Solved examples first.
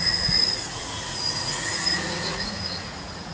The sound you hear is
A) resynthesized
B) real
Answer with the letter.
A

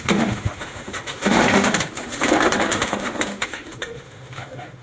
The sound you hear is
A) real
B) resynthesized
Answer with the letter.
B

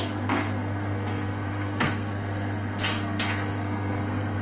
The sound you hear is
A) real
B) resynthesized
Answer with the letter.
B